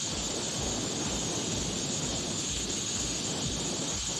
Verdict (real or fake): real